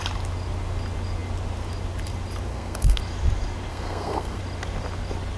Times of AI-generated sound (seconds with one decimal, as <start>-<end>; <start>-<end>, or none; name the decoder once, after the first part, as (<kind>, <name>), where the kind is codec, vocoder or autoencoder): 2.5-3.0 (codec, SNAC); 3.7-4.4